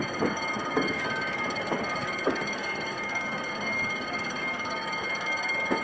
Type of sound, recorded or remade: remade